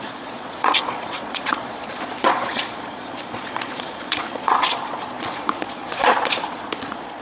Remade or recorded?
remade